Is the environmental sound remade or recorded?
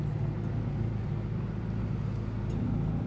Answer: recorded